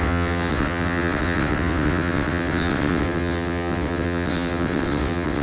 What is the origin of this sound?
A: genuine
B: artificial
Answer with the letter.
B